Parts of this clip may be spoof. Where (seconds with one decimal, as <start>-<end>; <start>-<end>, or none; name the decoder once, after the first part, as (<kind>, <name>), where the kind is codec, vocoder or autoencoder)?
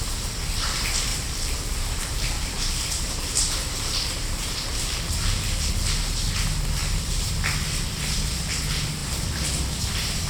1.1-5.7 (vocoder, BigVGAN v2); 6.8-7.3